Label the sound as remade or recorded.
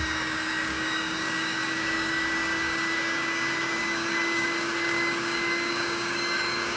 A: remade